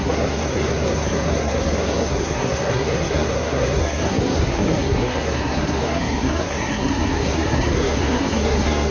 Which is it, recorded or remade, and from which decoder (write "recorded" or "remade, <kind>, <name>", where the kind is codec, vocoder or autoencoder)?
remade, codec, SNAC